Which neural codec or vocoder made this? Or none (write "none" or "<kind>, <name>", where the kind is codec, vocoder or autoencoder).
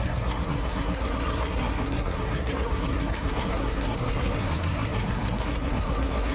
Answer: codec, SNAC